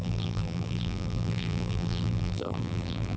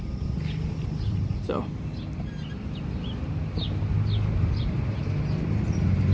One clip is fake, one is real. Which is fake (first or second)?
first